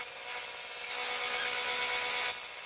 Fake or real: real